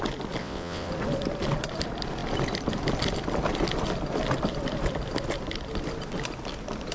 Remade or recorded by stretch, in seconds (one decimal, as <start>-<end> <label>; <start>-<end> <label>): 0.0-0.4 recorded; 0.4-0.9 remade; 0.9-6.9 recorded